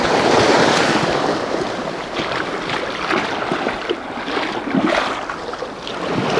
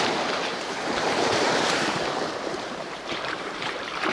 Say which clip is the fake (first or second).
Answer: second